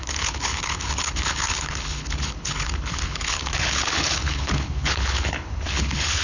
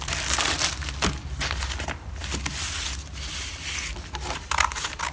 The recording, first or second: second